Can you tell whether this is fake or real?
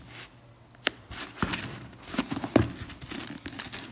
real